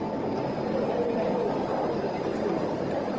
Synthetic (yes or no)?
no